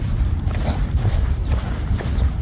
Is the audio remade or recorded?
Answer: recorded